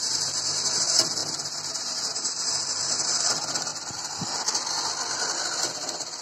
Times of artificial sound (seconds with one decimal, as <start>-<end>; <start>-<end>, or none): 0.0-3.7